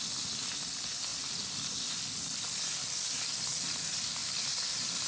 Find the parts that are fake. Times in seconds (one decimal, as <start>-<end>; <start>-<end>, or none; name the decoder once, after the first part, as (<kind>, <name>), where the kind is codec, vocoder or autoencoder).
none